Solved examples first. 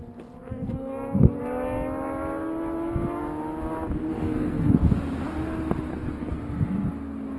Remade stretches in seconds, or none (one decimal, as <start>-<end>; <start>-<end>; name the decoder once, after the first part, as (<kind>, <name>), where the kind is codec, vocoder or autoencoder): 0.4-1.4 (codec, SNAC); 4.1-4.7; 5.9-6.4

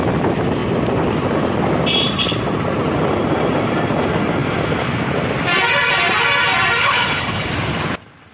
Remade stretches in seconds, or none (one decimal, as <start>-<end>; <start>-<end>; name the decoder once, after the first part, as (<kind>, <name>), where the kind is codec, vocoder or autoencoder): 6.8-7.5 (codec, HILCodec)

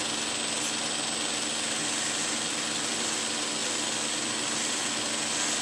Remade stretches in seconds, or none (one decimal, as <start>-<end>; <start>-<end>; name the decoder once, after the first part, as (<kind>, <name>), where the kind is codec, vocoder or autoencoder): none